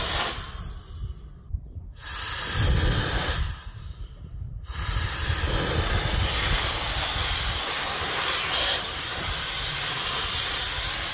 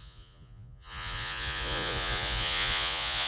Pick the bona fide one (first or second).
first